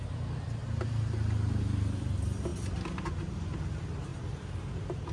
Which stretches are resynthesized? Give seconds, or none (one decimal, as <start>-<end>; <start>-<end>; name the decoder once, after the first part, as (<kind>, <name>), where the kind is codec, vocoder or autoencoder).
none